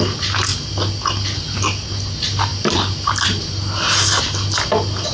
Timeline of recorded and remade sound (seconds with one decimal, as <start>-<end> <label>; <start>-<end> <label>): 0.0-2.5 recorded; 2.5-3.5 remade; 3.5-5.1 recorded